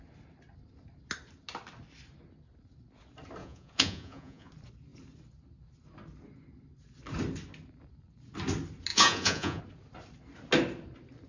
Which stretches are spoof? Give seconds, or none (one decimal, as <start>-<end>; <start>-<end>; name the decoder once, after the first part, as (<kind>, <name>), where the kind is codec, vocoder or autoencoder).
3.4-4.5 (vocoder, Vocos); 8.9-9.6